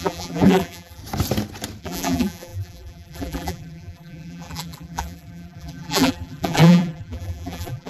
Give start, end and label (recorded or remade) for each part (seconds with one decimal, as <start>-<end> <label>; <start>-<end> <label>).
0.0-1.0 remade; 1.0-1.8 recorded; 1.8-7.9 remade